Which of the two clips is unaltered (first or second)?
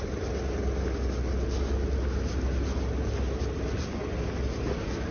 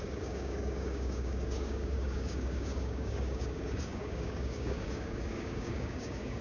first